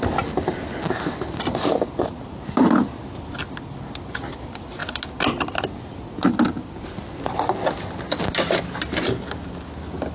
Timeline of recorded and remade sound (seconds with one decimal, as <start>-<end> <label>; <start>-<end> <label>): 0.0-10.1 recorded